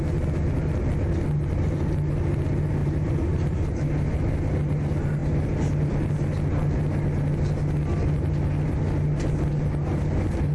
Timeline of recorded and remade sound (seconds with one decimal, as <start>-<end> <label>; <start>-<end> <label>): 0.0-2.8 recorded; 2.8-3.9 remade; 3.9-10.5 recorded